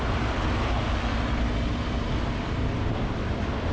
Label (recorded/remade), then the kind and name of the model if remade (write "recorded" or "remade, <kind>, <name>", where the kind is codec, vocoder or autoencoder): remade, vocoder, BigVGAN v2